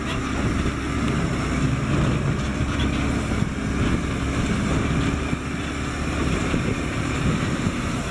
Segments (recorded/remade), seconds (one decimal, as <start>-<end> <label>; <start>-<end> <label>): 0.0-6.2 recorded; 6.2-8.1 remade